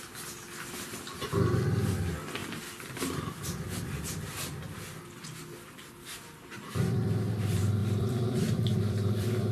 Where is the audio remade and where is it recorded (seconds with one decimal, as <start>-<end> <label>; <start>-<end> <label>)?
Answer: 0.0-2.4 recorded; 2.4-3.0 remade; 3.0-7.8 recorded; 7.8-9.5 remade